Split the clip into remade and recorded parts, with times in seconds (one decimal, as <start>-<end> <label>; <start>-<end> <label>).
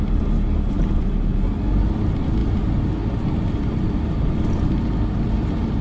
0.0-5.8 recorded